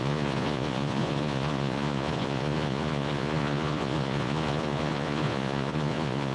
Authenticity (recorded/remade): remade